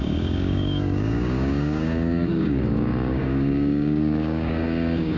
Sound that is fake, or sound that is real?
fake